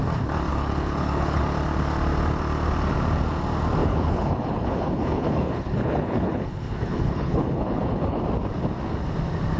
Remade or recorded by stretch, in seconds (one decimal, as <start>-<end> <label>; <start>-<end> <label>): 0.0-0.5 recorded; 0.5-1.4 remade; 1.4-3.8 recorded; 3.8-8.2 remade; 8.2-9.6 recorded